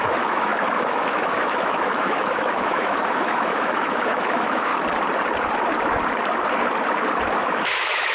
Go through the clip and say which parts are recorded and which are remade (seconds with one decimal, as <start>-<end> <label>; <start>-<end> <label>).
0.0-4.7 remade; 4.7-7.4 recorded; 7.4-8.1 remade